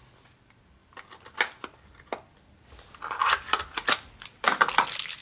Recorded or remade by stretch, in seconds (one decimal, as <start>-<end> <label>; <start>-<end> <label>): 0.0-5.2 recorded